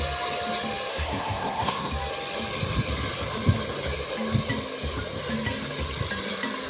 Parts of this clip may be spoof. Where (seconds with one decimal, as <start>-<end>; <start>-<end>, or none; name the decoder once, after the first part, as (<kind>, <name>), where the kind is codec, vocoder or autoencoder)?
0.9-1.9 (codec, SNAC)